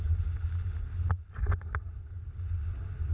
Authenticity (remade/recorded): recorded